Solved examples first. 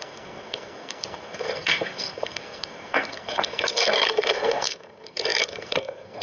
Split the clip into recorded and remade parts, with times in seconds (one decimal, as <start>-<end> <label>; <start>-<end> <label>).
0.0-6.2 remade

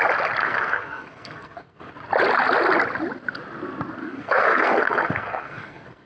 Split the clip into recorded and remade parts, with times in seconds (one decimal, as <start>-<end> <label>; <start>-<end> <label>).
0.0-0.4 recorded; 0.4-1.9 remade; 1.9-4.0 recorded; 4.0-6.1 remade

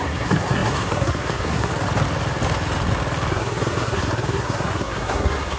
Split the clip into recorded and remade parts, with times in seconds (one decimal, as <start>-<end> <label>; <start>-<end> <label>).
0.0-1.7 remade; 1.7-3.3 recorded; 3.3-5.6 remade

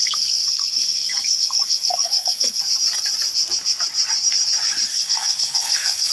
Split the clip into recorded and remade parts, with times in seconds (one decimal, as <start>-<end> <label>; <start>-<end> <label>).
0.0-2.6 remade; 2.6-4.9 recorded; 4.9-6.1 remade